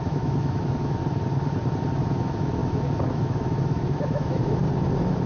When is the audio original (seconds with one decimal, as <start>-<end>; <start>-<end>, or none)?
1.0-1.9; 4.6-5.3